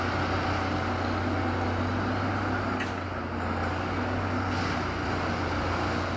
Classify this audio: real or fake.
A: real